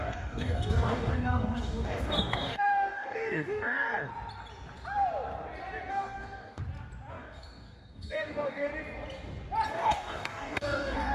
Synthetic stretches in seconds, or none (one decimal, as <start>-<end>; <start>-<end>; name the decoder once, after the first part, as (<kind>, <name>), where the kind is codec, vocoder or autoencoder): 0.0-4.1 (codec, DAC); 5.9-6.6; 7.1-8.7; 9.7-11.1